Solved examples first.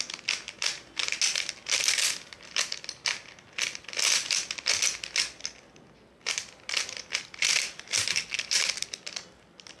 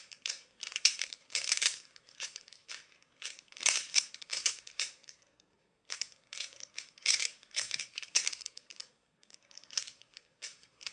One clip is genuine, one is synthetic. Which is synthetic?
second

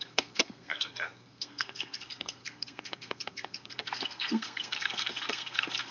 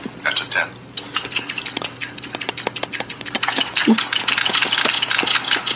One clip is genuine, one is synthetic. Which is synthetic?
first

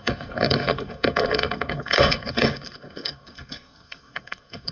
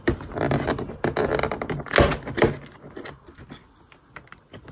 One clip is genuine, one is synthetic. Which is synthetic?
first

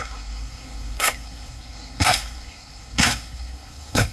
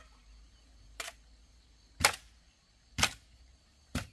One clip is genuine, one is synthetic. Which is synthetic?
first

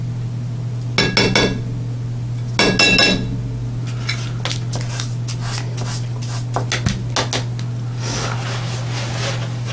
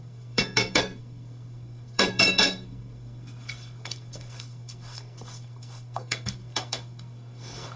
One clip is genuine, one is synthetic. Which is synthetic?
second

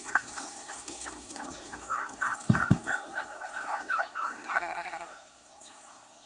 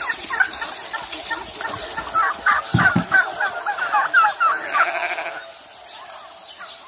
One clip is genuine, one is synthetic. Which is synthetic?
first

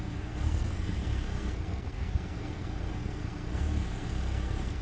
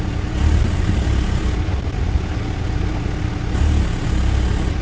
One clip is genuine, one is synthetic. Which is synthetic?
first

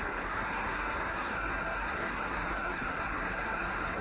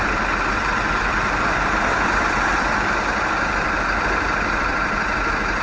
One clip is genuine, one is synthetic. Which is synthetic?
first